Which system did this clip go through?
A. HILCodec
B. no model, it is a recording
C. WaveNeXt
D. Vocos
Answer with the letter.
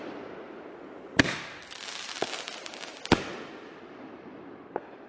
B